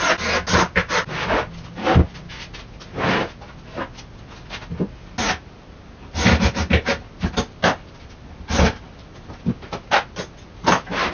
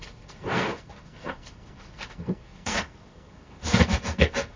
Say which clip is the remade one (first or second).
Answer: second